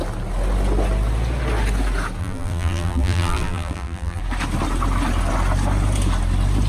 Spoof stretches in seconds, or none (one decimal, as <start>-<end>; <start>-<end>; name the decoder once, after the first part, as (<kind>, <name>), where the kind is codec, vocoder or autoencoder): 2.2-4.2 (vocoder, BigVGAN v2)